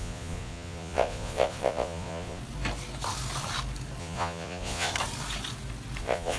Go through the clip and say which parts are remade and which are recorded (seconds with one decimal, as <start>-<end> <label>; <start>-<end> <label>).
0.0-2.4 remade; 2.4-4.0 recorded; 4.0-4.9 remade; 4.9-6.0 recorded; 6.0-6.4 remade